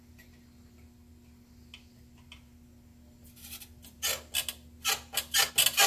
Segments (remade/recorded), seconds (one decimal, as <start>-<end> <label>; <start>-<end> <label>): 0.0-5.9 recorded